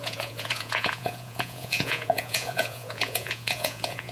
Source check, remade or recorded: remade